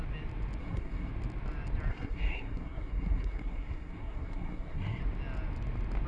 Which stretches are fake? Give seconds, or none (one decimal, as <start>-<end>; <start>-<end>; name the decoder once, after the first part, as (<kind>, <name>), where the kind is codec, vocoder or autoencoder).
0.6-1.1 (codec, SNAC); 1.9-5.0